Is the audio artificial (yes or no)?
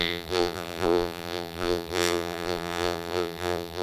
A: yes